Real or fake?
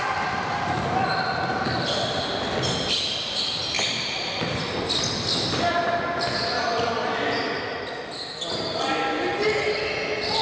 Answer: real